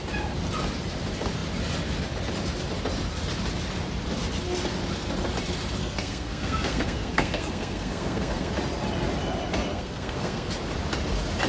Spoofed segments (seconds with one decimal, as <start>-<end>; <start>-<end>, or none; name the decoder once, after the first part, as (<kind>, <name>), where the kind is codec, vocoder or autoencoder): 5.8-8.5 (codec, SNAC); 9.7-10.5